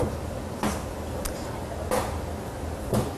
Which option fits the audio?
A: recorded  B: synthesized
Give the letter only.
A